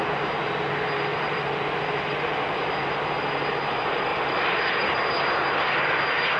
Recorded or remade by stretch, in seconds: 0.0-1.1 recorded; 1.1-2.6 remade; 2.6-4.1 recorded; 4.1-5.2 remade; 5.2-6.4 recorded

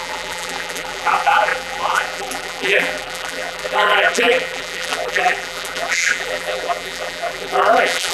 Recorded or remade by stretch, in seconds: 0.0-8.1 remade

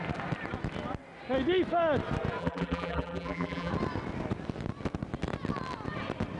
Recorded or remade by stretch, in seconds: 0.0-2.4 recorded; 2.4-3.7 remade; 3.7-6.4 recorded

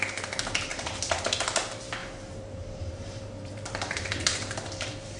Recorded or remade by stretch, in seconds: 0.0-0.7 recorded; 0.7-1.2 remade; 1.2-2.0 recorded; 2.0-5.2 remade

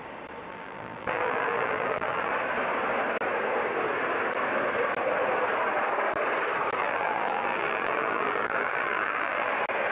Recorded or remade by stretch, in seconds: 0.0-0.5 recorded; 0.5-2.3 remade; 2.3-6.8 recorded; 6.8-9.5 remade; 9.5-9.9 recorded